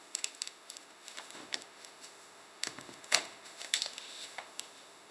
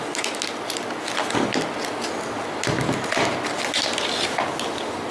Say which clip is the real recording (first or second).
second